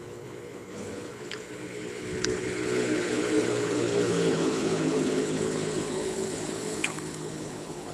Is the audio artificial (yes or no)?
yes